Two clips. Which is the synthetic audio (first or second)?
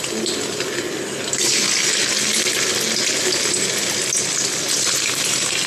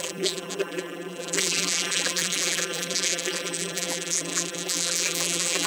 second